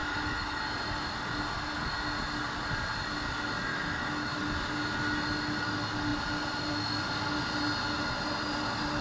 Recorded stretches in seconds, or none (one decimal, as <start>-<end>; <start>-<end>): 0.6-3.7; 4.3-9.0